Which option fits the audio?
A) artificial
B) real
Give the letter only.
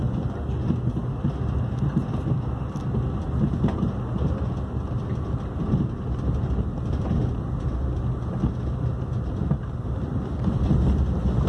B